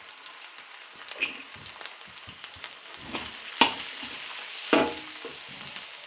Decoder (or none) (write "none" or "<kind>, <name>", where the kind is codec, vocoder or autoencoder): none